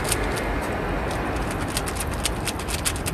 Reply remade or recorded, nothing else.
recorded